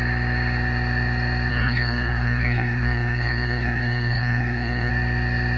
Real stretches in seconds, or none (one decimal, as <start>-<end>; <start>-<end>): 0.0-1.5; 4.9-5.6